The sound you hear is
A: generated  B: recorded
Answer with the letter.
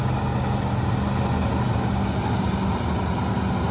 B